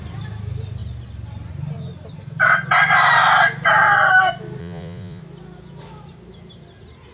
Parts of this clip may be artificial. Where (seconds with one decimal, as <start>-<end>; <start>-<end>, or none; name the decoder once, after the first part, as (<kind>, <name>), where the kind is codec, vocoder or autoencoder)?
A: 4.6-5.2 (vocoder, Vocos)